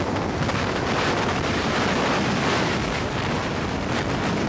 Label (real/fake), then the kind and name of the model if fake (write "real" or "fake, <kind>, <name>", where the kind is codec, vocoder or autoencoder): real